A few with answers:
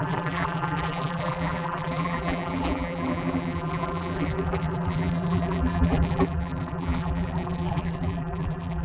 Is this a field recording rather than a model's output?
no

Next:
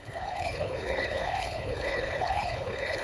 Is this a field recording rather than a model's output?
no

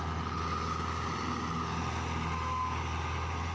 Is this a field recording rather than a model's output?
yes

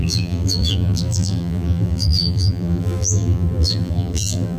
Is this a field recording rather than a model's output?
no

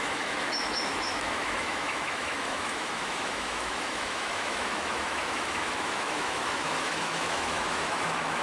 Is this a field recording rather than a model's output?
no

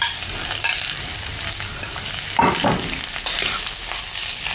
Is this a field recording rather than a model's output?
yes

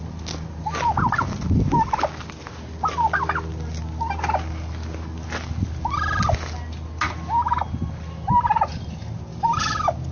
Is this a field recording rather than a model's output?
yes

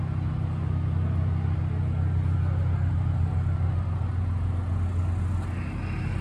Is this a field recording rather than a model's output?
yes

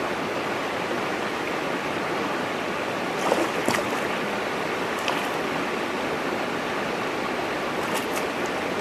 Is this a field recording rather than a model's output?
yes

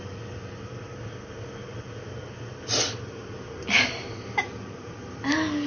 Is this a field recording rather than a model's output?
yes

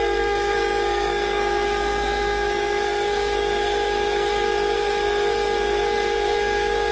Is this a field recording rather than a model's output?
no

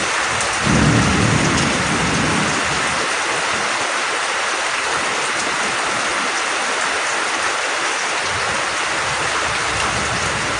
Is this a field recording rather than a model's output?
yes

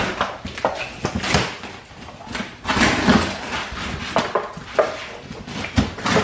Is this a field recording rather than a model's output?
yes